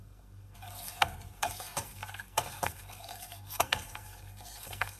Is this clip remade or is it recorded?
remade